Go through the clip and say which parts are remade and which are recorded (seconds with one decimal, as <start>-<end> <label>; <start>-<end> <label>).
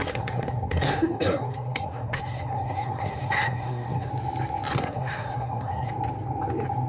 0.0-4.1 remade; 4.1-4.7 recorded; 4.7-5.9 remade; 5.9-6.9 recorded